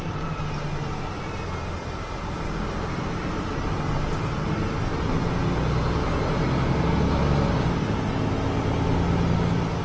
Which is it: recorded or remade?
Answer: recorded